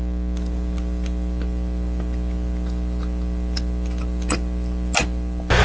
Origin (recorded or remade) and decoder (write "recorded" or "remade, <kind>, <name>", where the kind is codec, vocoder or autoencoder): recorded